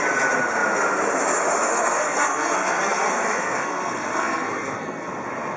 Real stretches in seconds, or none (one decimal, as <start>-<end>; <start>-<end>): 0.0-1.7; 5.1-5.6